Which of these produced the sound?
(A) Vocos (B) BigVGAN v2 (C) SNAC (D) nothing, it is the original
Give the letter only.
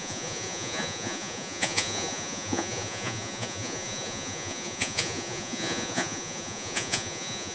A